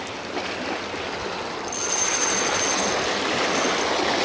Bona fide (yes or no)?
yes